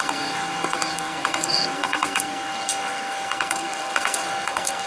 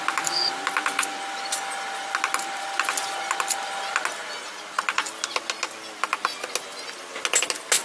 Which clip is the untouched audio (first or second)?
second